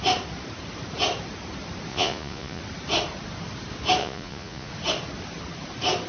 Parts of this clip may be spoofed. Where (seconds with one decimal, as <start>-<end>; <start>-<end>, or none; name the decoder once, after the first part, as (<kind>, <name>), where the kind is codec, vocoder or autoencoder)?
1.9-2.6 (vocoder, Vocos); 4.0-4.7